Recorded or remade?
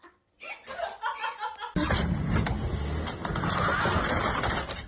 recorded